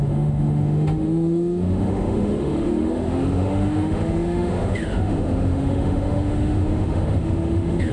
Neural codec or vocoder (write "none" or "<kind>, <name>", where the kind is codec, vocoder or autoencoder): autoencoder, DAC-VAE